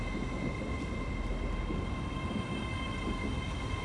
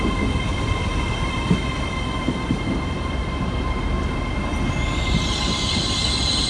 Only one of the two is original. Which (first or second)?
first